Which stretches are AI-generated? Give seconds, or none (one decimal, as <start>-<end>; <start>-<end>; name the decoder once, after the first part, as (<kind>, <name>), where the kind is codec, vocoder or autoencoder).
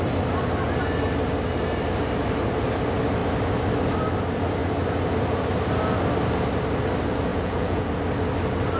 7.3-7.9 (vocoder, Vocos)